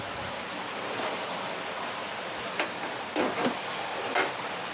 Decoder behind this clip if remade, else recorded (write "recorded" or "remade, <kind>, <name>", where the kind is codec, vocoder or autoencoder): recorded